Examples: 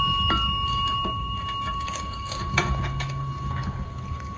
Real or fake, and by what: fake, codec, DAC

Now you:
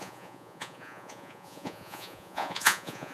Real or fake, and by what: fake, vocoder, Vocos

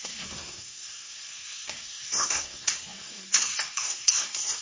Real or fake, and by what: fake, codec, SNAC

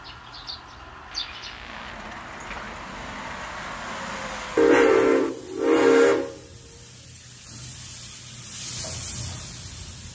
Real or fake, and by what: real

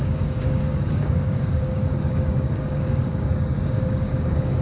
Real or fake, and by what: fake, codec, DAC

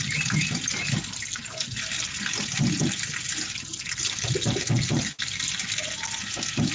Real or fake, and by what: real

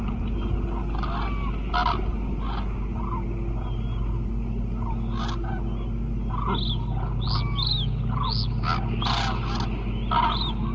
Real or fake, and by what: real